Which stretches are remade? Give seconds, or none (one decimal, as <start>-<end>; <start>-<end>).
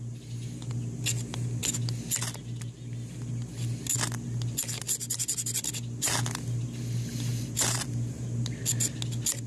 none